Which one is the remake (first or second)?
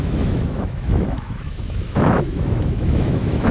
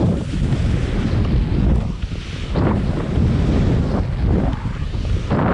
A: first